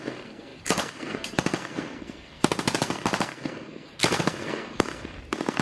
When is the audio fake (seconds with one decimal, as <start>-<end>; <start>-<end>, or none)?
0.0-5.6